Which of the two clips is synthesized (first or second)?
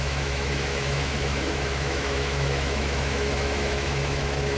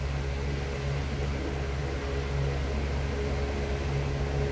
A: first